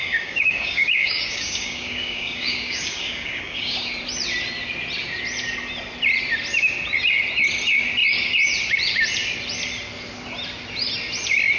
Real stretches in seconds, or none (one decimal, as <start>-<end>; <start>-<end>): 3.9-11.6

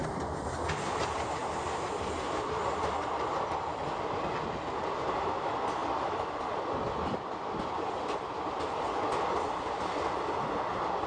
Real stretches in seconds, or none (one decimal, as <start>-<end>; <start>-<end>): 0.0-11.1

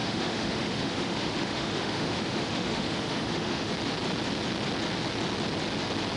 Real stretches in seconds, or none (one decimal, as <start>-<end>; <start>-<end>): 3.7-6.2

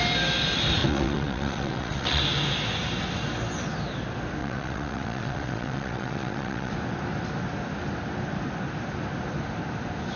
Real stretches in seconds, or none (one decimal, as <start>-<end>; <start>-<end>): 0.0-0.8; 2.2-4.4; 6.7-10.2

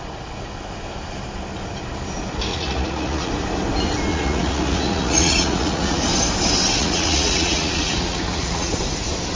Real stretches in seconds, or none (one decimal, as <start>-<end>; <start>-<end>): 0.0-2.5; 3.3-4.1; 6.0-6.8; 8.7-9.4

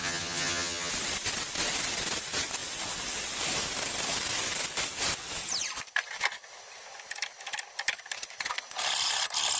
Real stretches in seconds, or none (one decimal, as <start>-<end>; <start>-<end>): 0.9-9.6

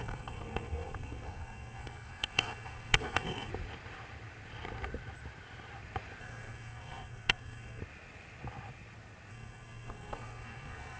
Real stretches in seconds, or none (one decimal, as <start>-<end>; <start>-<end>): 3.5-6.2; 7.8-9.3